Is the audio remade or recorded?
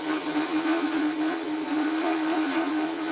remade